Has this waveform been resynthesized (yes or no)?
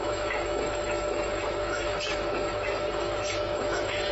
yes